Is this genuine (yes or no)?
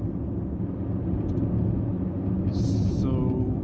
yes